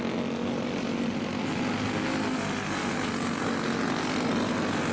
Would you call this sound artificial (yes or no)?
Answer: no